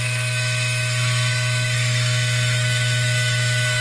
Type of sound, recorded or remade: remade